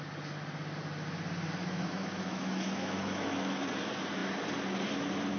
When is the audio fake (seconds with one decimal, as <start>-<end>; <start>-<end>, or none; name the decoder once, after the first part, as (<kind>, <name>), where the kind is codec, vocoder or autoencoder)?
1.6-3.6 (autoencoder, DAC-VAE)